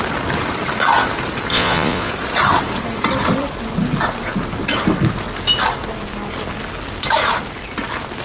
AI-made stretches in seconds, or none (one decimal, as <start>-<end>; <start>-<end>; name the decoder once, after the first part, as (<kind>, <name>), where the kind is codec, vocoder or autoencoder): 1.5-2.1 (vocoder, Vocos)